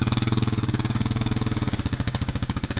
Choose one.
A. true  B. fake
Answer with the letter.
B